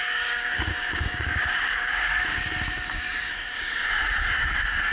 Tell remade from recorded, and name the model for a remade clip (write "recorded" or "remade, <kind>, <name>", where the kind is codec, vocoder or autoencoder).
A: remade, codec, DAC